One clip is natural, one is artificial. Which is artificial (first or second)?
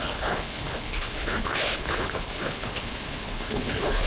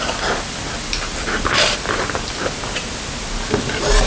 first